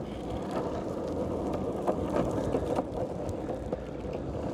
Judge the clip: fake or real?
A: real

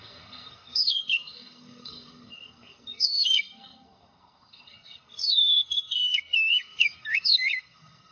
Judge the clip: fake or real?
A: fake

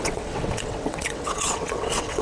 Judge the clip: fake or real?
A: fake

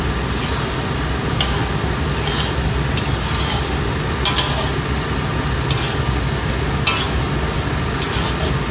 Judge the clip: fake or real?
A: real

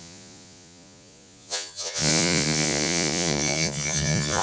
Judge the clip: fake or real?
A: fake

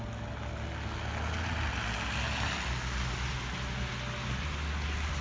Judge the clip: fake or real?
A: real